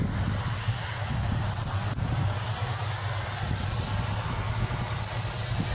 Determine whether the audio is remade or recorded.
recorded